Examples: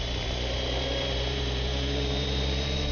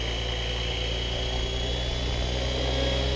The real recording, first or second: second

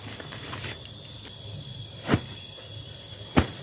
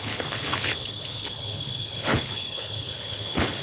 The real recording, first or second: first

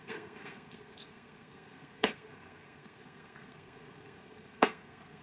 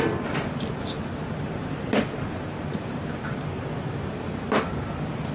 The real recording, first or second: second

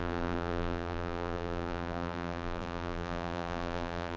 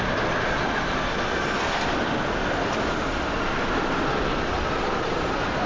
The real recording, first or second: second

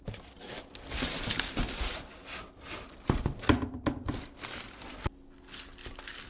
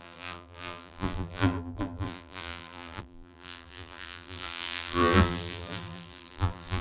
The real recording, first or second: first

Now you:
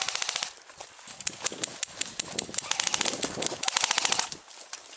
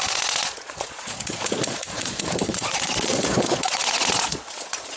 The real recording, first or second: first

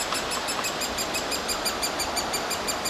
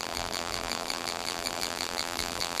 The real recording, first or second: first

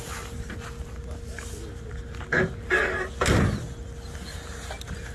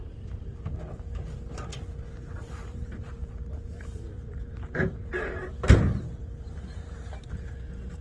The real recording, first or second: first